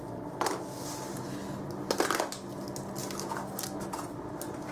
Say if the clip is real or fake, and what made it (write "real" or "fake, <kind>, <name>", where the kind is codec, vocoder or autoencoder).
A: real